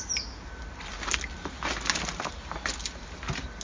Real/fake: real